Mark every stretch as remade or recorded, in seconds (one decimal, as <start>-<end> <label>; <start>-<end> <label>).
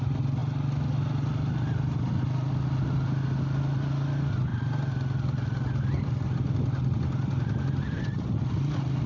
0.0-9.1 recorded